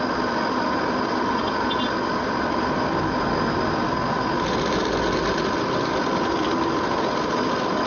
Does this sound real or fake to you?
real